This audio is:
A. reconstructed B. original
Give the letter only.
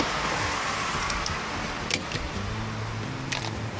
B